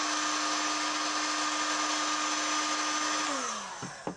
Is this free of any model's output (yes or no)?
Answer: yes